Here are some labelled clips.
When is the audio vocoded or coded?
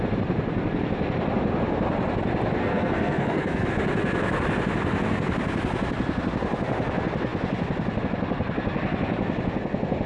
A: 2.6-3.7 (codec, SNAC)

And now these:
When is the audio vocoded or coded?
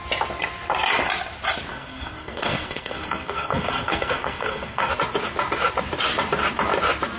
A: 1.7-4.9 (codec, SNAC)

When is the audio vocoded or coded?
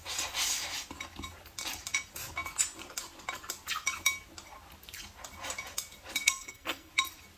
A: 6.2-6.9 (codec, SNAC)